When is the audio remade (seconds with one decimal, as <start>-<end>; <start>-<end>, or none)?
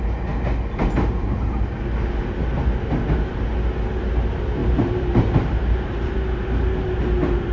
4.6-7.0